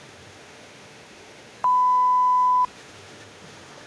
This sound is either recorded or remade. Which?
remade